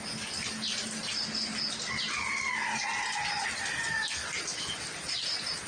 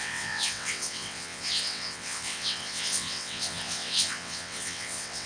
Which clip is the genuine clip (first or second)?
first